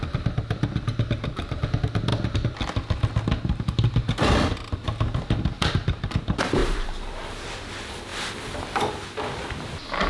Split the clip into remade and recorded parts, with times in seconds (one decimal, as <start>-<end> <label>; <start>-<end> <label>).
0.0-6.6 recorded; 6.6-7.7 remade; 7.7-10.1 recorded